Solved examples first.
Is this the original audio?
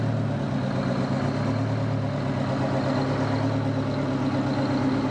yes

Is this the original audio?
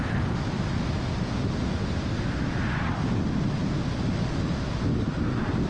yes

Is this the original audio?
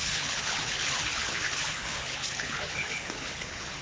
no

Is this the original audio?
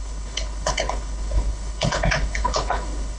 no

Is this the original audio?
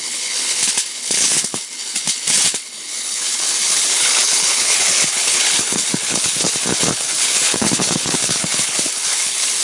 no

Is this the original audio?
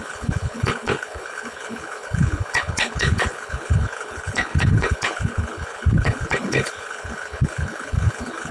no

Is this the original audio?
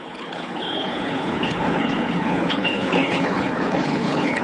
no